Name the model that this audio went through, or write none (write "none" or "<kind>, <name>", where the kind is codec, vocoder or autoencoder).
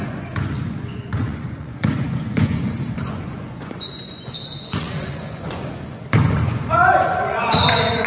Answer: vocoder, Vocos